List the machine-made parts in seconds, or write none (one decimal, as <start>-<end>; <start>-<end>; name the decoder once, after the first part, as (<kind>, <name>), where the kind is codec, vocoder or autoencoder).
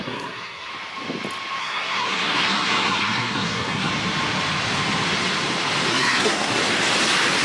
0.0-0.7 (codec, SNAC); 1.6-3.9; 5.9-6.6